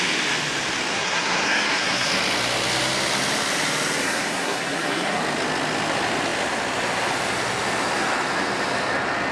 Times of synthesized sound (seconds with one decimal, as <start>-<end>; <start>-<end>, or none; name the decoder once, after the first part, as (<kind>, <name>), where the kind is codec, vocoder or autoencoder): 0.9-2.1 (codec, SNAC); 4.0-5.2